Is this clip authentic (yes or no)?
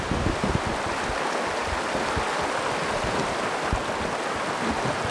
yes